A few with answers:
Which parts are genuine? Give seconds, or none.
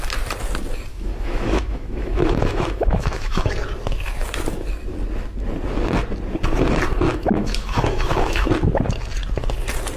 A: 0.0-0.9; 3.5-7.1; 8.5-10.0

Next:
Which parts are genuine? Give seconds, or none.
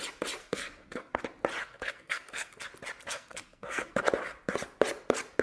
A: 0.0-0.4; 1.2-1.6; 2.7-3.1; 4.0-5.4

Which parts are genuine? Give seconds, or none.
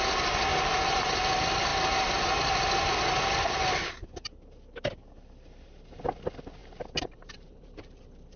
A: 0.0-0.5; 1.0-6.6; 8.0-8.4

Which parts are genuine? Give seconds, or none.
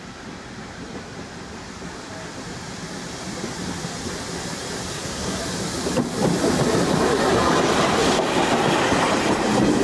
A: 0.0-4.9; 5.4-9.8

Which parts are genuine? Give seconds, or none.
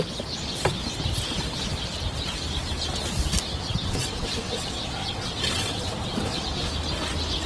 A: 0.0-3.5; 6.7-7.5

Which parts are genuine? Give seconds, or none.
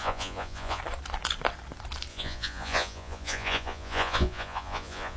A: 0.8-2.1